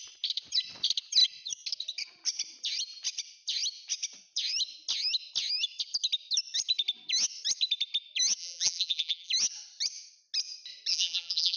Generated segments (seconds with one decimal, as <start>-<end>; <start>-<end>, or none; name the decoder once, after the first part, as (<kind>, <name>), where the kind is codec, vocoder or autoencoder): 8.4-9.3 (vocoder, BigVGAN v2); 10.9-11.6

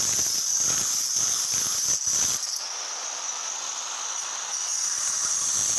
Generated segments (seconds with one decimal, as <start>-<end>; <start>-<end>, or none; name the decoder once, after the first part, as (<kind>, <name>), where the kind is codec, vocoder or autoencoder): none

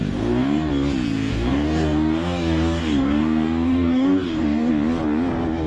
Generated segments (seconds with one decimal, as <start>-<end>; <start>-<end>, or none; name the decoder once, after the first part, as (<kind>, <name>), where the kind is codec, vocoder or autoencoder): 0.0-0.7 (codec, DAC); 1.3-4.7

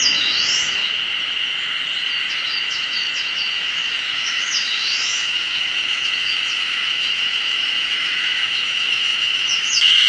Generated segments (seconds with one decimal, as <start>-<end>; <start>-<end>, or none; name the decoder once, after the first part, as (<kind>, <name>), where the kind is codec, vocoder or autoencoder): 0.0-0.8 (autoencoder, DAC-VAE); 2.3-10.1

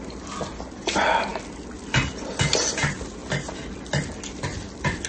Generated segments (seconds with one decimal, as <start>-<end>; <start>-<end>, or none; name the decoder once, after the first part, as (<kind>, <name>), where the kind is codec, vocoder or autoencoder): none

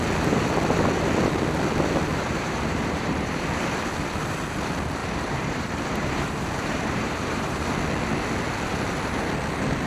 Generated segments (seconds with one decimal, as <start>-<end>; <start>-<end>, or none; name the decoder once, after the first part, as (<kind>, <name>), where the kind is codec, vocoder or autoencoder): 2.1-3.4 (vocoder, BigVGAN v2); 5.0-7.7

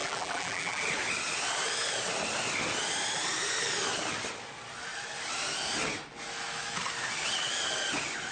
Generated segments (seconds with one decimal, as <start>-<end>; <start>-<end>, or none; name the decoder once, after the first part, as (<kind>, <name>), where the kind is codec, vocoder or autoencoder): 0.0-0.8 (vocoder, BigVGAN v2)